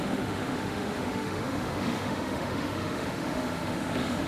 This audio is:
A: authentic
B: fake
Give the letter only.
B